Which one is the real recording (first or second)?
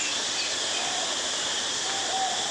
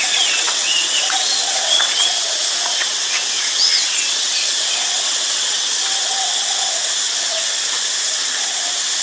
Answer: first